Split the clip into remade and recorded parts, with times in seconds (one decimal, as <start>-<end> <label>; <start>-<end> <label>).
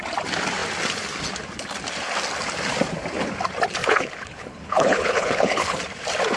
0.0-3.8 recorded; 3.8-5.8 remade; 5.8-6.4 recorded